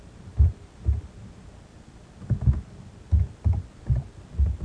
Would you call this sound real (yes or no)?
yes